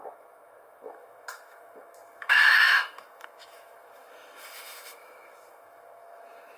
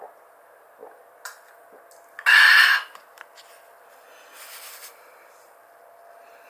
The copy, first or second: first